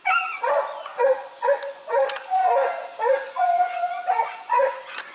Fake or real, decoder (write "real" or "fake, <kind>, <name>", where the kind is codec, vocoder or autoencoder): fake, vocoder, Vocos